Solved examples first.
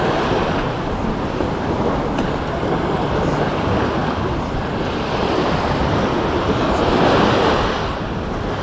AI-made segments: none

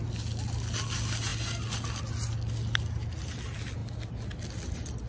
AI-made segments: none

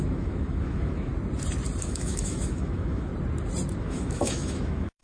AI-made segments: 0.0-1.1 (autoencoder, DAC-VAE); 1.8-3.1; 3.8-5.0

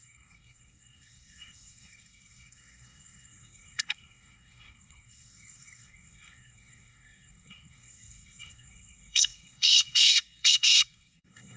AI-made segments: 0.0-11.6 (codec, SNAC)

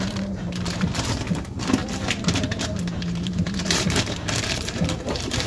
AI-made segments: 0.0-5.5 (vocoder, BigVGAN v2)

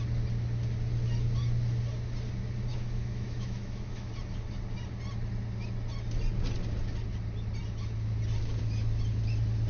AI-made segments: 2.7-4.1 (autoencoder, DAC-VAE)

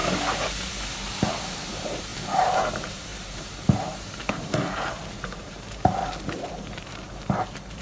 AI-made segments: 0.0-6.0 (vocoder, BigVGAN v2); 6.5-7.8